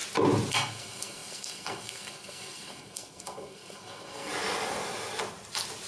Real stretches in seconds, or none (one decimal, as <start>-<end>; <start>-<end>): 0.0-0.5; 4.3-5.9